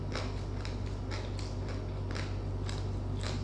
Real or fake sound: real